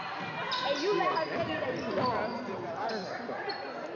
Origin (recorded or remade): recorded